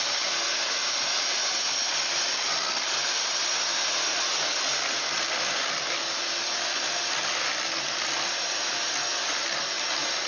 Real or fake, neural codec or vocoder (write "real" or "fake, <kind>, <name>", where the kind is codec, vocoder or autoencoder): real